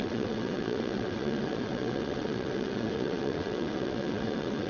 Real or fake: fake